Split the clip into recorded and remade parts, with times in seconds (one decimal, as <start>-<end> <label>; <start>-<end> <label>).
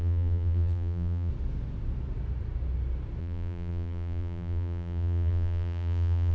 0.0-1.3 remade; 1.3-3.2 recorded; 3.2-6.3 remade